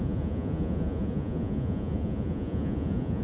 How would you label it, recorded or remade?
remade